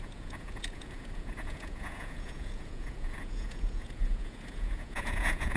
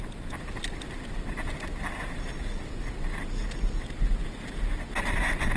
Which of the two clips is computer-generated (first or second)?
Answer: first